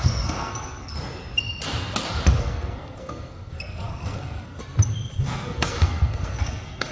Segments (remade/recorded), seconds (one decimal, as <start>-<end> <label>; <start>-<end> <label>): 0.0-0.9 remade; 0.9-2.4 recorded; 2.4-4.6 remade; 4.6-5.2 recorded; 5.2-6.9 remade